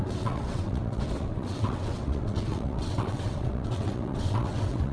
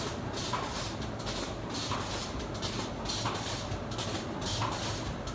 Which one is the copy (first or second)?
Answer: first